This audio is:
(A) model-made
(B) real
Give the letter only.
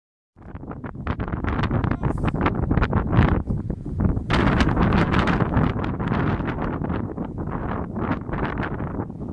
B